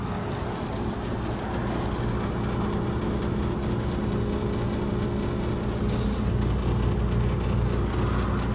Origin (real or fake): real